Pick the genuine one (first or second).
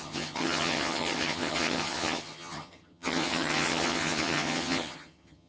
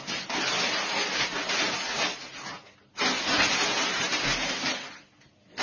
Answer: second